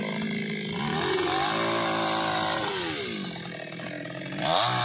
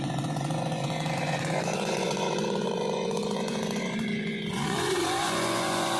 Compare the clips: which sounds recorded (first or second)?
first